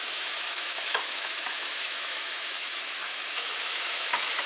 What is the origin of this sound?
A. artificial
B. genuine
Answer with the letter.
A